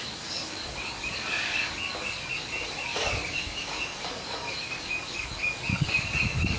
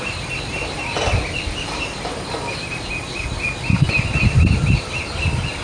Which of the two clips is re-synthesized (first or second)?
first